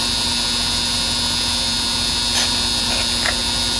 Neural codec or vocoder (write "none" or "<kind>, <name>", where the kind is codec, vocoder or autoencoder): none